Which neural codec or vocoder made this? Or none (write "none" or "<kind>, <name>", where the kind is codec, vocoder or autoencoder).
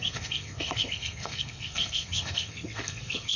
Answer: codec, SNAC